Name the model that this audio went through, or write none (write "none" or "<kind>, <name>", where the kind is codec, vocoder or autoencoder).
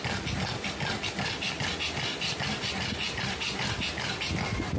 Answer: none